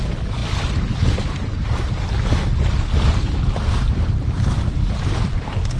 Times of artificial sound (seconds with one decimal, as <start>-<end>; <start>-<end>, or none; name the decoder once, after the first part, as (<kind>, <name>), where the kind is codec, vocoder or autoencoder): none